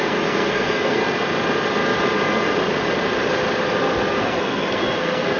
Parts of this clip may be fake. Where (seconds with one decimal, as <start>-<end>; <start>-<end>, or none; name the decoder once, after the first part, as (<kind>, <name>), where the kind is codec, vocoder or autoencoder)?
0.0-1.0 (codec, SNAC); 4.2-5.4